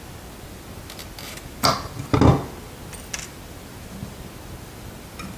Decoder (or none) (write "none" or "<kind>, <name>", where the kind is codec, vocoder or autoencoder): none